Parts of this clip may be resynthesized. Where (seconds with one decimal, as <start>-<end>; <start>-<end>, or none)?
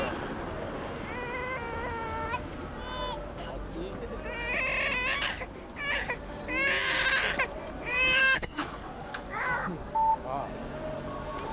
7.9-10.1